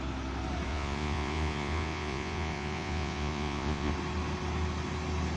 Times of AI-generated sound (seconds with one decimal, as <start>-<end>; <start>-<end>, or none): 0.7-3.9